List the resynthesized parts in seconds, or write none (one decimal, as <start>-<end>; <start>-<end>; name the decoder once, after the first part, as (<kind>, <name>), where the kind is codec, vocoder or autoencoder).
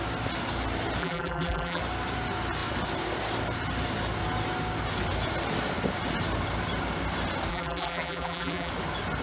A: 1.0-1.8 (vocoder, BigVGAN v2); 7.5-8.7